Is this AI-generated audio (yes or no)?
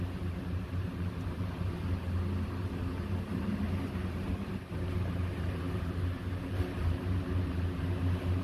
yes